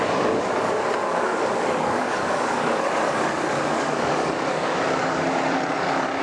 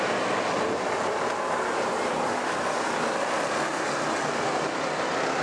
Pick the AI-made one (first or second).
first